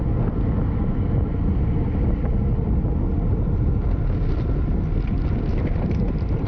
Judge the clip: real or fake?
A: real